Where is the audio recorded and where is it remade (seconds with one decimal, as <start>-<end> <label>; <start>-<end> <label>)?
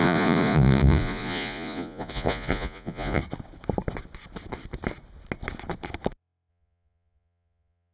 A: 0.0-3.2 remade; 3.2-6.5 recorded; 6.5-7.9 remade